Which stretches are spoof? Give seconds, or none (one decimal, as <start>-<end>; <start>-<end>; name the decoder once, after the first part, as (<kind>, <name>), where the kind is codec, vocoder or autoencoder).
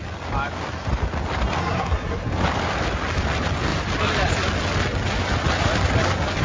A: 1.6-2.3 (codec, SNAC)